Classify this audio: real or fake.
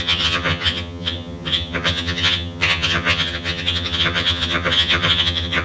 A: fake